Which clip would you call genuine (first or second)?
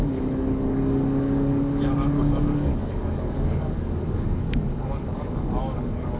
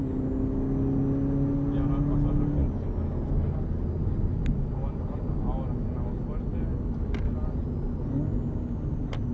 second